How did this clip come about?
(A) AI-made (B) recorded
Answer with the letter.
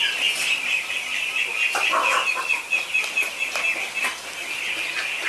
B